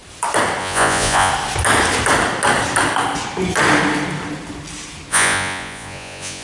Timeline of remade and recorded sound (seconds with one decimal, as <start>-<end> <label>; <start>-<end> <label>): 0.0-0.6 recorded; 0.6-1.3 remade; 1.3-5.1 recorded; 5.1-6.4 remade